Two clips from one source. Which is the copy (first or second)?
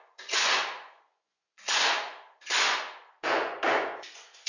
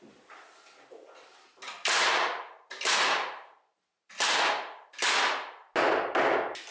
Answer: first